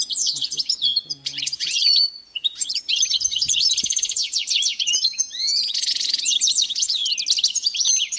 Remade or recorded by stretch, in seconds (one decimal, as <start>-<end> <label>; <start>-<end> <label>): 0.0-7.0 remade; 7.0-7.5 recorded; 7.5-8.2 remade